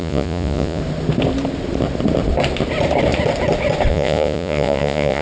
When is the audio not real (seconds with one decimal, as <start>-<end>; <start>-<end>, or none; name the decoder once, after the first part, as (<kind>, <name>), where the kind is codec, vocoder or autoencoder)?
0.0-0.8 (vocoder, Vocos); 3.9-5.2